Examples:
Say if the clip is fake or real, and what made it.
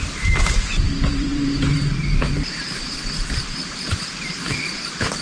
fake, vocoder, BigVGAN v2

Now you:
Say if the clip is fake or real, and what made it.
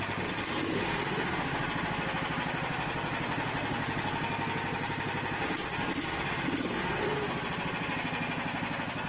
real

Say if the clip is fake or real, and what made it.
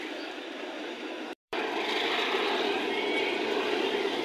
fake, vocoder, BigVGAN v2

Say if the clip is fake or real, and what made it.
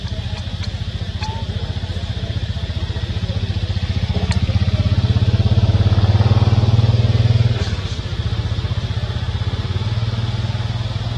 real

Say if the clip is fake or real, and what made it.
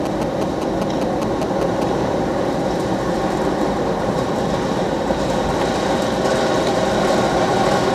fake, vocoder, BigVGAN v2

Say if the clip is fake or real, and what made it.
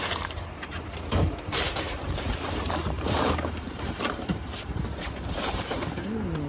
fake, vocoder, BigVGAN v2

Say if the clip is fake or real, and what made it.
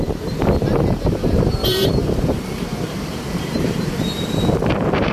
fake, vocoder, BigVGAN v2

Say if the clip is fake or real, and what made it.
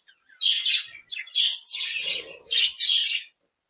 real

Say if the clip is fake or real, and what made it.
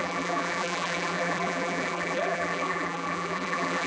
fake, vocoder, BigVGAN v2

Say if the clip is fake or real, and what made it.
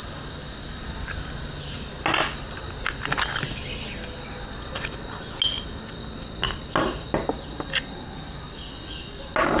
real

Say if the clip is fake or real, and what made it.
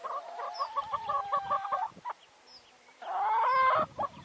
real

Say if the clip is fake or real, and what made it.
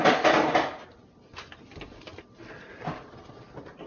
fake, vocoder, BigVGAN v2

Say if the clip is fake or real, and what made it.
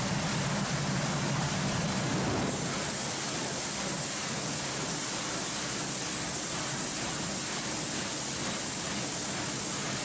real